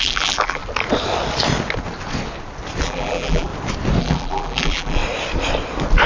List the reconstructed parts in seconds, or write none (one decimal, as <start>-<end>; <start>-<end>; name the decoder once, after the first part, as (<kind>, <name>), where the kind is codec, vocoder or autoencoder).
0.0-0.6 (vocoder, BigVGAN v2); 2.8-3.5; 4.0-5.0

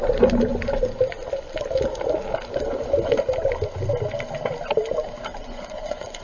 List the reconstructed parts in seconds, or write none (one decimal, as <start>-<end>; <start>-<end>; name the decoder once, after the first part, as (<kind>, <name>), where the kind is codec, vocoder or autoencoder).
5.3-6.2 (vocoder, Vocos)

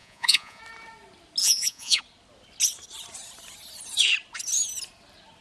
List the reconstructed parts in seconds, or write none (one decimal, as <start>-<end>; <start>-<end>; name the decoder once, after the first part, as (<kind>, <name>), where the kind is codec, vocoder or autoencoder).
0.0-0.6 (vocoder, Vocos); 1.4-2.0

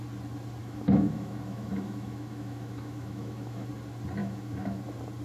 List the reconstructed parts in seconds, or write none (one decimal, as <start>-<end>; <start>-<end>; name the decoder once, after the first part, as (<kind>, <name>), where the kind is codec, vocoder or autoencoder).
0.6-3.7 (autoencoder, DAC-VAE); 4.2-4.8

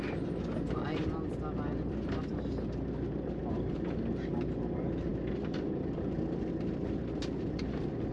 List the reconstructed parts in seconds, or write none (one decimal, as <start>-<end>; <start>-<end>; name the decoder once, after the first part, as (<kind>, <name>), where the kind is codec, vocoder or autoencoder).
none

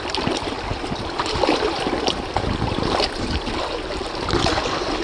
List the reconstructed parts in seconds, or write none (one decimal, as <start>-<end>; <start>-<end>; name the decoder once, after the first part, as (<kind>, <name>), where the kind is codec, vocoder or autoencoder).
none

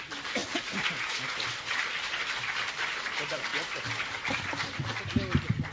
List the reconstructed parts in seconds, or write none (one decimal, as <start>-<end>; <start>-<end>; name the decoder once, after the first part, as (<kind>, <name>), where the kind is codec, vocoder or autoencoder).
none